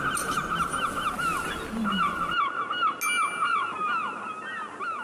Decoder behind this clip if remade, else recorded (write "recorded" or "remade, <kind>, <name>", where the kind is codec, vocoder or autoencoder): recorded